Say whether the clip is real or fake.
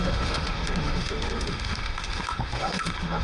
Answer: fake